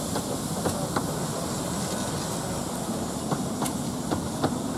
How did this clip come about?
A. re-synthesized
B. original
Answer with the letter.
B